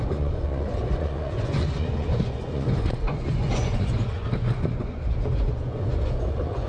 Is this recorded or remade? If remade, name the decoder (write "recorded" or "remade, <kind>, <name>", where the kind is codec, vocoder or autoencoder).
remade, vocoder, Vocos